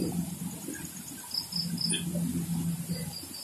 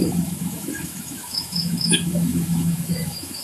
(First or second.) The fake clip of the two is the second